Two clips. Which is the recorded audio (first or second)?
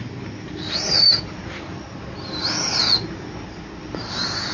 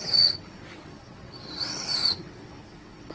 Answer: first